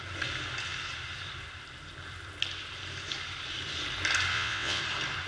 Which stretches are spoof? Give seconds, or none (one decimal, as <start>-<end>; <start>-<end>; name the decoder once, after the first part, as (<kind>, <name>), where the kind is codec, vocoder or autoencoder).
4.3-4.8 (vocoder, WaveNeXt)